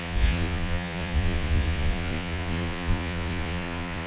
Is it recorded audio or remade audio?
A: remade